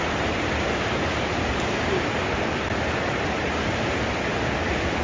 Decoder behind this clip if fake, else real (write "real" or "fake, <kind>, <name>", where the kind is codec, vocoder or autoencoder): real